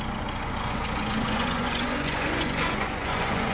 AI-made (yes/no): yes